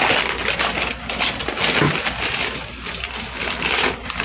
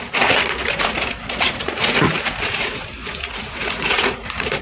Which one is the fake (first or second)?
second